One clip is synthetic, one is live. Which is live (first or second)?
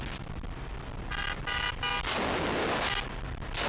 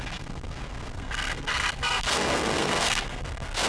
first